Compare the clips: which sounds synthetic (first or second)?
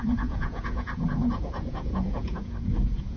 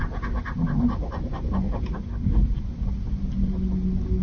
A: first